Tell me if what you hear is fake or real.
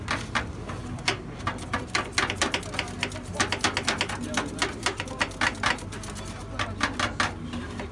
real